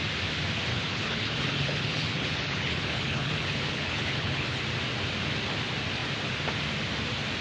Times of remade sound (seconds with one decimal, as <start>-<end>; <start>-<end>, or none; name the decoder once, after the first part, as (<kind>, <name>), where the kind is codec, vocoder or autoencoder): 0.7-4.6 (codec, HILCodec)